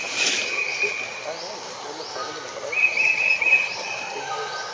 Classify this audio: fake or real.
real